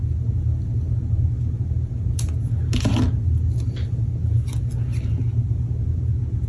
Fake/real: real